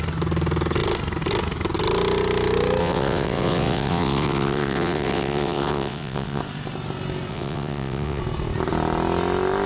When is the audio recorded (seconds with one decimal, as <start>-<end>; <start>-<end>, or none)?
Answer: 0.0-2.8; 6.4-7.3; 8.2-9.7